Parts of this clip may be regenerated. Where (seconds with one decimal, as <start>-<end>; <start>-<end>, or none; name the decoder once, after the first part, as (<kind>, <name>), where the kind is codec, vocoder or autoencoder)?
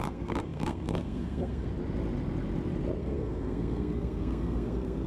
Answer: 0.0-1.7 (codec, SNAC); 3.0-5.1